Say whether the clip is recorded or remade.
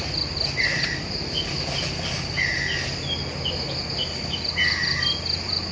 recorded